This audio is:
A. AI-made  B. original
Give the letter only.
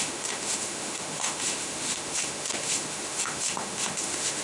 A